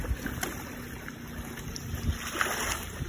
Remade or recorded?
recorded